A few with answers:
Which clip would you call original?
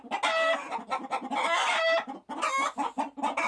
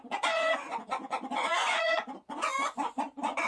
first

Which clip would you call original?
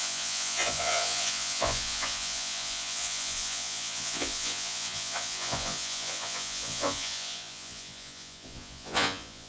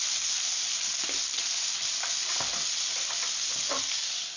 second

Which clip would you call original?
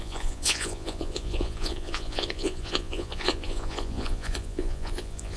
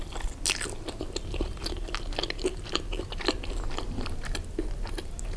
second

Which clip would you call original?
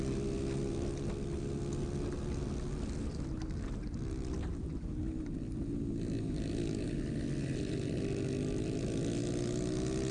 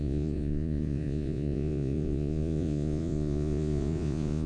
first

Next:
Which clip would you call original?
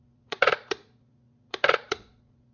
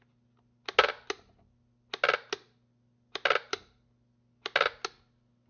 second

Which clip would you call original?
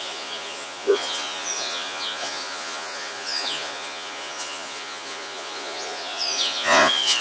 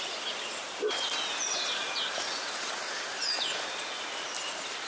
second